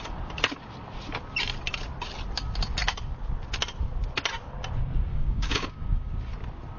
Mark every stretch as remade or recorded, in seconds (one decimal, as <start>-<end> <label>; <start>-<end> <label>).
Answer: 0.0-5.1 recorded; 5.1-6.1 remade; 6.1-6.8 recorded